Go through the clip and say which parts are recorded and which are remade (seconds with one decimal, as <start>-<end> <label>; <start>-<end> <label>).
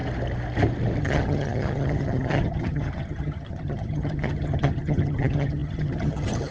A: 0.0-1.0 recorded; 1.0-6.5 remade